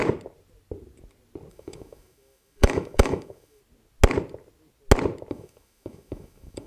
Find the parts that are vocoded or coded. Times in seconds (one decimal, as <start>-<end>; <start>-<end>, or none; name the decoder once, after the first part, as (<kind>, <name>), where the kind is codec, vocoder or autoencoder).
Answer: 1.5-3.6 (autoencoder, DAC-VAE); 5.3-6.7